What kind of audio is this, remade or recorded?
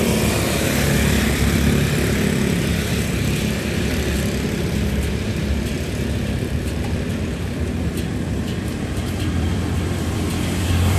remade